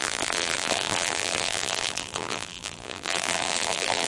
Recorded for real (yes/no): no